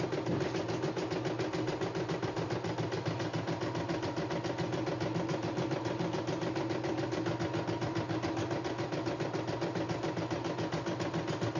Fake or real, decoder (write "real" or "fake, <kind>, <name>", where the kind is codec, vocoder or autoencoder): real